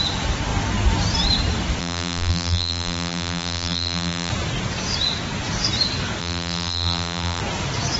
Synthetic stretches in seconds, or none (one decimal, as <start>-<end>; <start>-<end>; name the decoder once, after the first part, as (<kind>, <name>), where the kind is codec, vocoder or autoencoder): 1.8-4.3 (vocoder, BigVGAN v2); 6.2-7.4